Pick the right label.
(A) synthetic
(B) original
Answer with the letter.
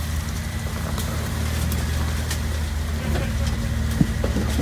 B